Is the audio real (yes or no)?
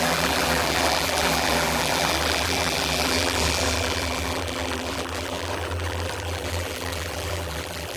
no